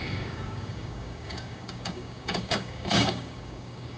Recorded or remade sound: remade